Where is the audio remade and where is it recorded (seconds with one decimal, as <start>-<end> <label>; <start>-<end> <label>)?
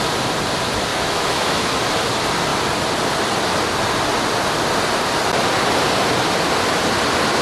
0.0-0.9 recorded; 0.9-1.8 remade; 1.8-7.4 recorded